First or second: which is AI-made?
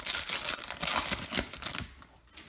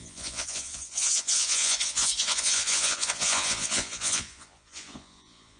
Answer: second